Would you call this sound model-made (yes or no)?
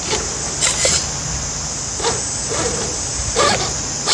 no